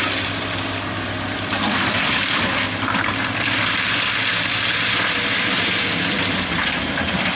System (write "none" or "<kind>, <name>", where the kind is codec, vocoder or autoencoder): vocoder, BigVGAN v2